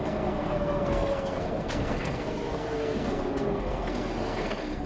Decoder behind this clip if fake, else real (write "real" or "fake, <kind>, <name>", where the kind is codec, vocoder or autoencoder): fake, codec, SNAC